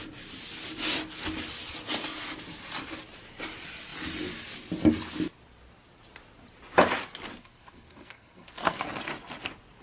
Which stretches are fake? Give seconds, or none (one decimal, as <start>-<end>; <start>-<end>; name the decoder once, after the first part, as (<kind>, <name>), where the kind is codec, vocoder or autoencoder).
7.4-8.8 (codec, SNAC)